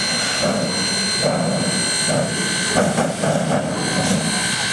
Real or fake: real